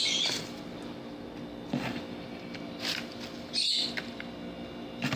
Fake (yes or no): no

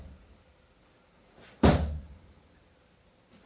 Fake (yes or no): no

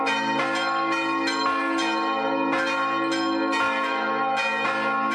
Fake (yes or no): no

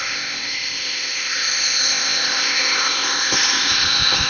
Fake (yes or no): yes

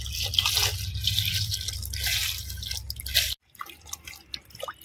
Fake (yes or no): no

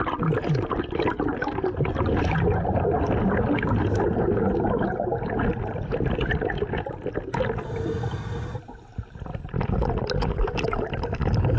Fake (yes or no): no